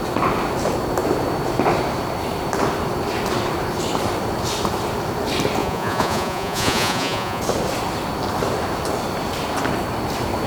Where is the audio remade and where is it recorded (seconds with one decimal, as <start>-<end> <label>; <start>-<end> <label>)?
0.0-5.6 recorded; 5.6-7.4 remade; 7.4-10.5 recorded